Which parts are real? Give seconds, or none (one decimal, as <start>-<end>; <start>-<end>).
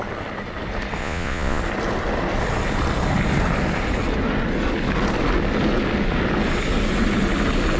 0.0-1.0; 1.6-7.8